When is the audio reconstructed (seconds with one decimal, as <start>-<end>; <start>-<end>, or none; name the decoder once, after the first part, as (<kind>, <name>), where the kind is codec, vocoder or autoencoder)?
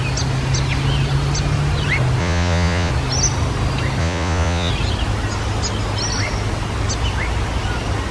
2.2-2.9 (vocoder, Vocos); 4.0-4.7